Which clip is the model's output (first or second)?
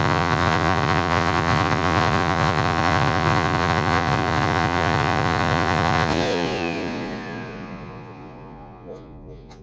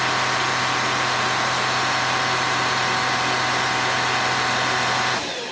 first